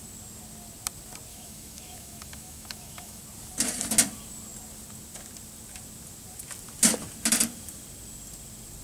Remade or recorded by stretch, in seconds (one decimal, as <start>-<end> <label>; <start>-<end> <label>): 0.0-1.3 recorded; 1.3-3.2 remade; 3.2-8.8 recorded